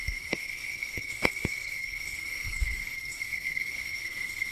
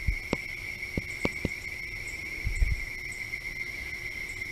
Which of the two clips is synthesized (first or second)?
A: first